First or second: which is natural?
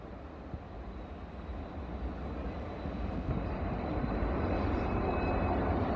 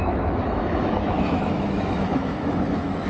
first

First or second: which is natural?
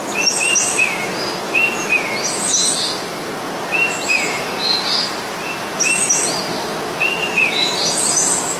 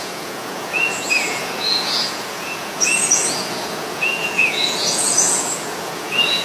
first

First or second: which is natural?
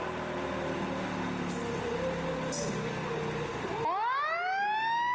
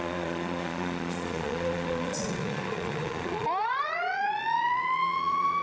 first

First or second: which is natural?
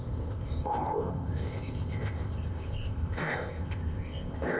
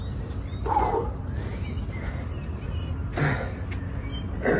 second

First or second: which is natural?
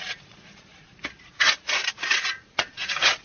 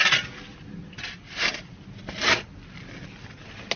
second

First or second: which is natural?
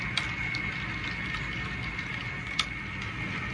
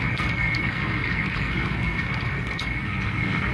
first